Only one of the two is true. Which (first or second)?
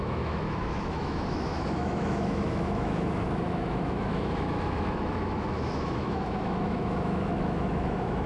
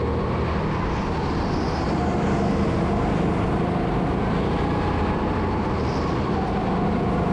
second